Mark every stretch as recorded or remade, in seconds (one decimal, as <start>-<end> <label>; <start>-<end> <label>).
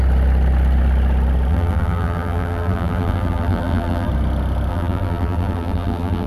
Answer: 0.0-1.5 recorded; 1.5-4.1 remade; 4.1-4.7 recorded; 4.7-6.3 remade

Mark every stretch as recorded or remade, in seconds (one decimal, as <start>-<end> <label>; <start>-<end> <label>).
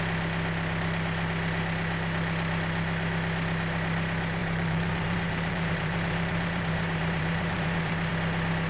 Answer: 0.0-4.4 recorded; 4.4-8.1 remade; 8.1-8.7 recorded